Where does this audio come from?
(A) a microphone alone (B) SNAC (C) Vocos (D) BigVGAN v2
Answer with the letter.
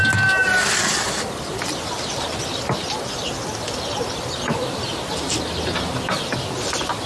A